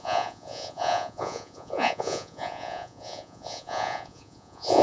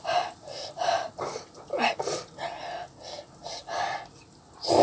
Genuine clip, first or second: second